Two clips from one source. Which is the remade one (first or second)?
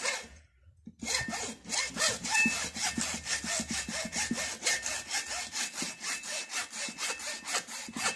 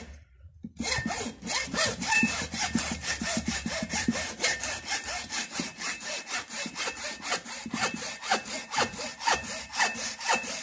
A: second